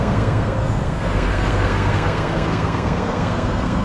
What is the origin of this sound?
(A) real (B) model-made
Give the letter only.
B